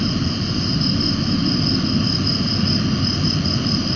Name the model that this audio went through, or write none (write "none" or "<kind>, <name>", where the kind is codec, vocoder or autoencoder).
none